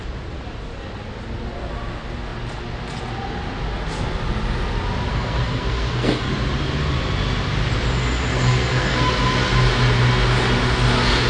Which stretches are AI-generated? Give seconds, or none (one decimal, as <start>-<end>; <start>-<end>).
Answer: 5.1-6.3; 8.3-9.1